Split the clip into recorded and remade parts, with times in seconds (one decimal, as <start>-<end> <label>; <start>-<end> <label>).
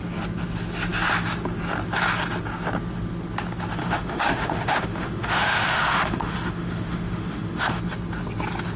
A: 0.0-3.8 recorded; 3.8-7.8 remade; 7.8-8.8 recorded